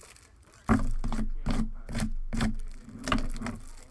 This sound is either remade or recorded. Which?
recorded